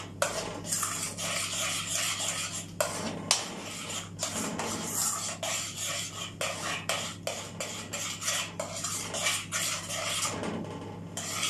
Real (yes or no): yes